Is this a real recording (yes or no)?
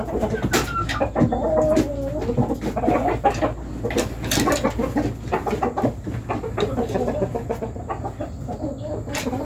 yes